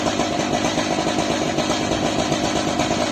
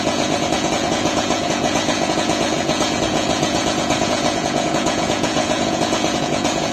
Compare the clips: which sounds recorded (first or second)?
first